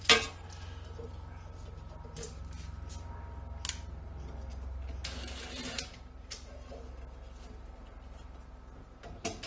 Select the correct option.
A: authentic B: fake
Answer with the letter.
A